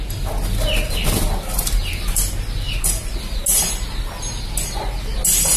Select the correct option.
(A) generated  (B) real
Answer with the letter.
B